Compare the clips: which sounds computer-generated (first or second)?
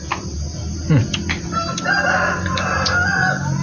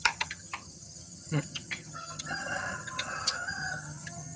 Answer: second